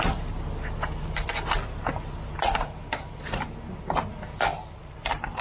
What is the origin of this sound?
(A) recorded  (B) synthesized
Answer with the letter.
A